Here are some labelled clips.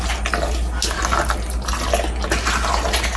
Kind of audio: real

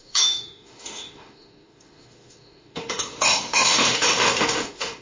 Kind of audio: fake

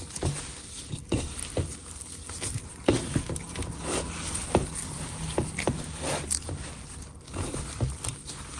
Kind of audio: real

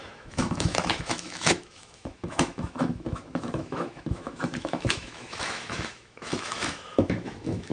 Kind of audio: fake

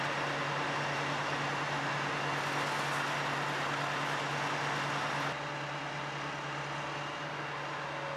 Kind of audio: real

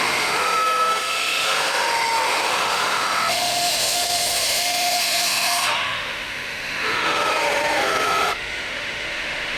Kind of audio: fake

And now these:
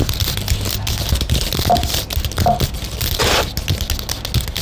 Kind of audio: real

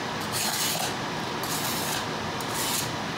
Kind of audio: real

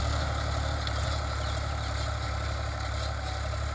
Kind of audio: real